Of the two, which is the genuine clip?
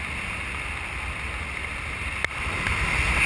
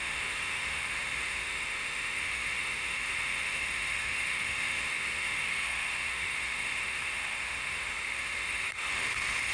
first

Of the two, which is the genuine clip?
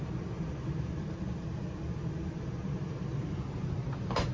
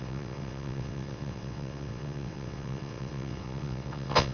first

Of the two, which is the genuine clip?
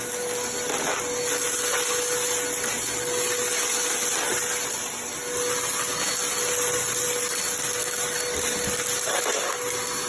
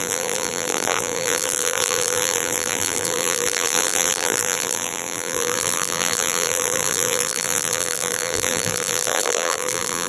first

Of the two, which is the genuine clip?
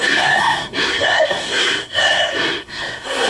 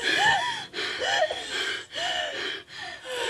second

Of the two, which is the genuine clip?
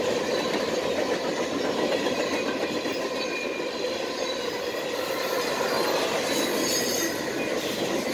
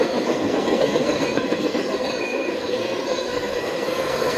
first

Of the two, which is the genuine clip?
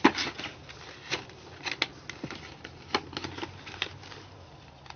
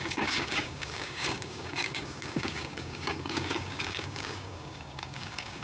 first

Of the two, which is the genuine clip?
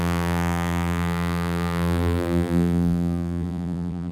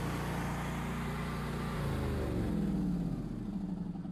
second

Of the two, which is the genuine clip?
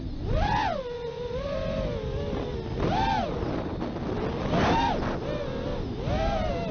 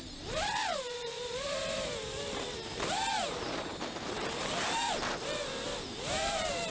first